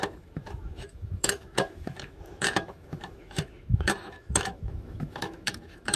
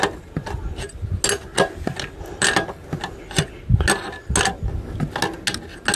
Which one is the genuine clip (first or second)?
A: second